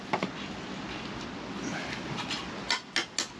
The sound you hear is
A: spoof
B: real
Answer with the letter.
B